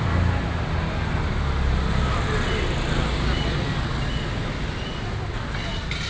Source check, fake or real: real